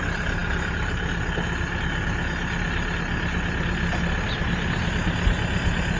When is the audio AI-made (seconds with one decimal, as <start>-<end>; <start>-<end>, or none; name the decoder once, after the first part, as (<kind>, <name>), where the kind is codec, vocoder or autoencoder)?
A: none